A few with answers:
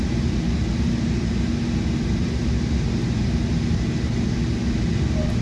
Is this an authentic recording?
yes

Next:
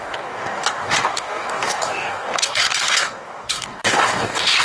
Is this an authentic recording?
no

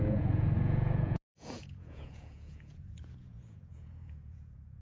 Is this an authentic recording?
no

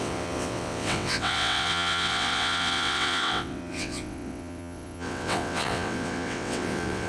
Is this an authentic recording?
no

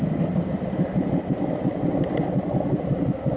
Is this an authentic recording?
yes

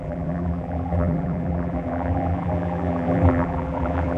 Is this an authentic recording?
no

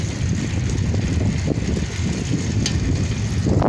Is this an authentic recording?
yes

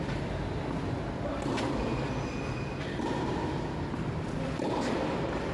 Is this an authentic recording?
yes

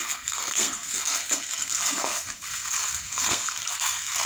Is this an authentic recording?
no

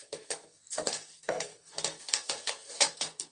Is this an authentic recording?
no